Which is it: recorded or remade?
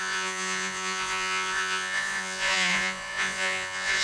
remade